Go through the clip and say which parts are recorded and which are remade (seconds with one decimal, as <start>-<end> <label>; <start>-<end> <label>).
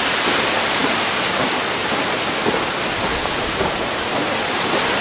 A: 0.0-5.0 recorded